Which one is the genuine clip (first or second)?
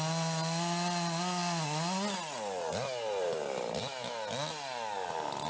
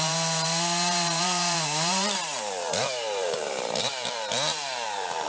first